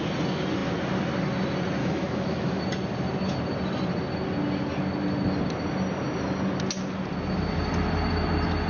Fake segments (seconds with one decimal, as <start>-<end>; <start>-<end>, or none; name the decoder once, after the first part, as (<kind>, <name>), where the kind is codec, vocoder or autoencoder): 1.8-2.6 (autoencoder, DAC-VAE)